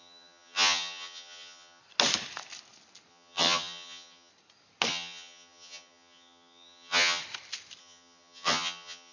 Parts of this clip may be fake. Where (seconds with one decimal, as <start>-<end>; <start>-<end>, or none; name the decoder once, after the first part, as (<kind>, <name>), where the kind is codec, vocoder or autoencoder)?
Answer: 0.0-1.8 (vocoder, HiFi-GAN); 3.1-4.3; 4.9-7.2; 7.8-9.1

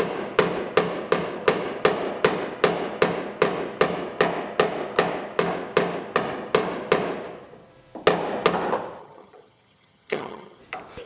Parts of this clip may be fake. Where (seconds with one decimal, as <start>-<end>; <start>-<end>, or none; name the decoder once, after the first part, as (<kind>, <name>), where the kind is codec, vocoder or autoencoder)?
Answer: 9.0-10.6 (vocoder, HiFi-GAN)

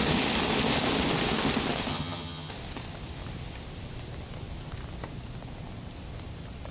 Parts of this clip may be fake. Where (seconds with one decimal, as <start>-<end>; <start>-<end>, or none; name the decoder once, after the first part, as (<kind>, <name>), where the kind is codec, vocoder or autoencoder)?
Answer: 1.9-2.5 (vocoder, HiFi-GAN)

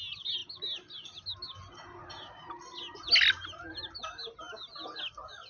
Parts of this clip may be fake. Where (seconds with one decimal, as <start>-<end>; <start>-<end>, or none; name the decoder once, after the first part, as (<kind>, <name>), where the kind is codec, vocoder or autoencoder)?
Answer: none

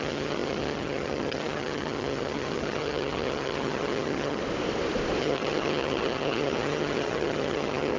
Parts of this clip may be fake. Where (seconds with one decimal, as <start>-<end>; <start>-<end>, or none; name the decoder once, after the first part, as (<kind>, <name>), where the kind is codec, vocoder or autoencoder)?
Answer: 0.0-4.4 (vocoder, HiFi-GAN); 5.2-8.0

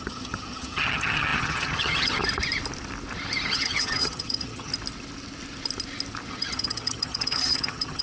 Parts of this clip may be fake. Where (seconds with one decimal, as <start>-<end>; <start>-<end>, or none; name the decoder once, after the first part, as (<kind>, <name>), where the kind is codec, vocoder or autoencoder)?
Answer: 0.0-2.2 (vocoder, HiFi-GAN); 3.5-4.7; 6.3-8.0

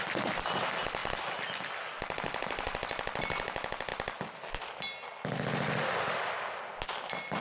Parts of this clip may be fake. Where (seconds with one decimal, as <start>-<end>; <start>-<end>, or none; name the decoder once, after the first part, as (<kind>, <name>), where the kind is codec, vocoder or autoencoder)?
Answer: none

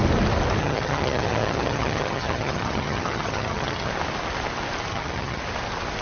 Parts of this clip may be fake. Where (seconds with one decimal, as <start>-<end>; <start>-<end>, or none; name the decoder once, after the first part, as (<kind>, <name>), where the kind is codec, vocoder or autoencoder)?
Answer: 0.6-3.9 (vocoder, HiFi-GAN); 4.9-5.4